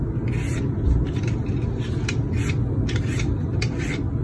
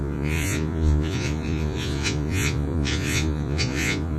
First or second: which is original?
first